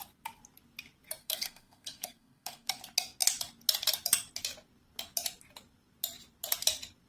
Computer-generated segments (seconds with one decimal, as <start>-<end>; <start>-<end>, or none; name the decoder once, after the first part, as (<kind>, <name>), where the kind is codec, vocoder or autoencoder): 1.2-2.8 (codec, SNAC)